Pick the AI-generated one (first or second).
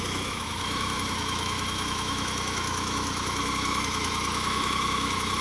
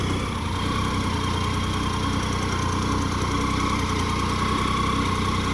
first